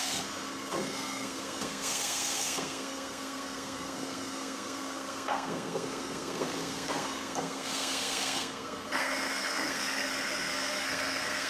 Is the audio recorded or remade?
remade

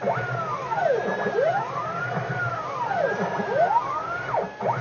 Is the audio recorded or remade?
recorded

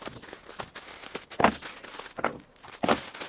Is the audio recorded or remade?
recorded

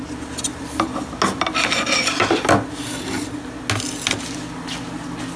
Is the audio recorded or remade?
recorded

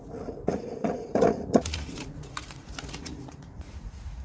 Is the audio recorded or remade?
remade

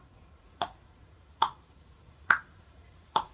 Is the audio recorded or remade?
remade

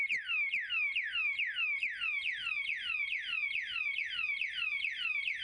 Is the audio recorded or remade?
recorded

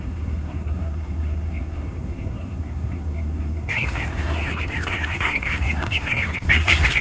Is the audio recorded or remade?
remade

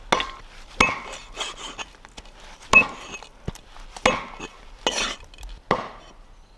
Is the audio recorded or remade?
recorded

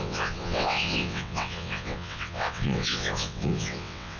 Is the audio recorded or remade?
remade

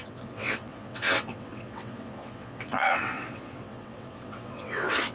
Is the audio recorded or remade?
remade